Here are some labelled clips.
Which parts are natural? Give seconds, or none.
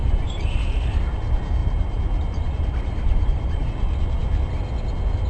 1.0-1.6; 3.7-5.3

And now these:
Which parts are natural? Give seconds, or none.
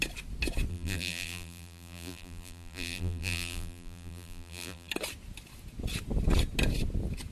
0.0-0.7; 4.9-7.3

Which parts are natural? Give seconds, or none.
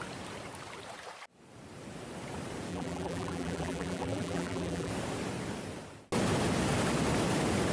0.0-2.7; 4.9-7.7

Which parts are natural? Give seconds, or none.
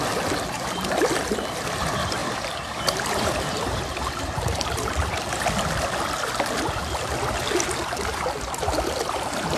0.0-2.2; 3.8-9.6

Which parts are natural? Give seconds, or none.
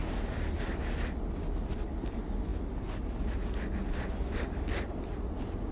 0.0-5.7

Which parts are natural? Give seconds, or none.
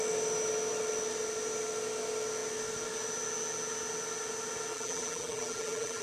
0.0-4.7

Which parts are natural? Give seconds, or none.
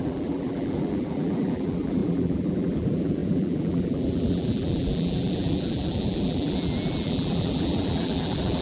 none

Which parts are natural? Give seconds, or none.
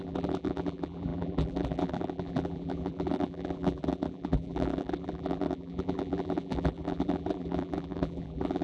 none